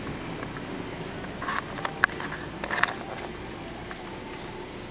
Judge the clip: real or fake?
real